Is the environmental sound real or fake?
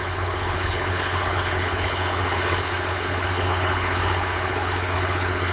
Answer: fake